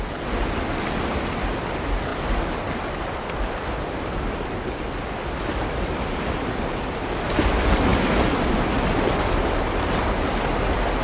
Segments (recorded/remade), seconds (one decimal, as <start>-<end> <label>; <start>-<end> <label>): 0.0-11.0 recorded